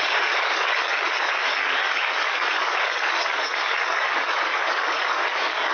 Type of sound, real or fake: fake